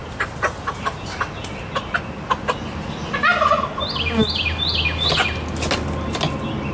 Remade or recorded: recorded